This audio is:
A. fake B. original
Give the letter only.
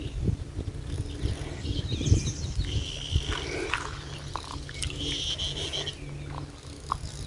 B